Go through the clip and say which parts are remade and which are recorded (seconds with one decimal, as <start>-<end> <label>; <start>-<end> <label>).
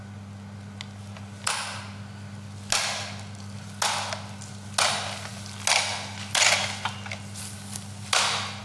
0.0-8.6 recorded